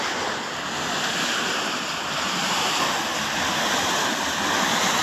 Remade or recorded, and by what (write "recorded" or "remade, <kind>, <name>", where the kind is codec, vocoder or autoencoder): recorded